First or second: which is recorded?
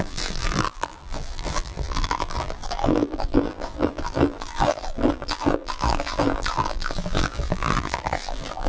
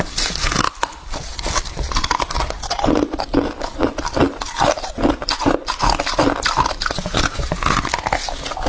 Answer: second